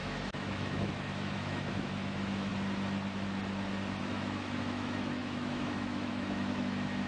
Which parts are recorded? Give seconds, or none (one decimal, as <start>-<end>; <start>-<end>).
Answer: 2.5-4.0